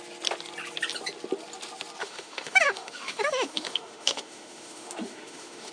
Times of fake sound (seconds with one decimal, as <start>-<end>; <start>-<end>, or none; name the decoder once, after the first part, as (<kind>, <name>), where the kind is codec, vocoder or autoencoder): 2.0-5.7 (autoencoder, DAC-VAE)